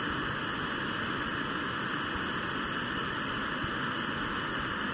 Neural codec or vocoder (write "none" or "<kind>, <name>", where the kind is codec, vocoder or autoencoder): none